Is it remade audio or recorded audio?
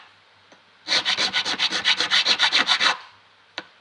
recorded